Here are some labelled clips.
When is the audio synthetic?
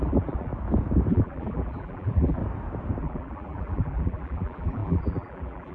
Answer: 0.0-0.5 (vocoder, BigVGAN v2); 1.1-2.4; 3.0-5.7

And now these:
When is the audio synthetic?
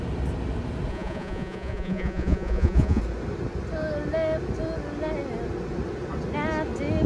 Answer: 0.9-3.0 (vocoder, Vocos)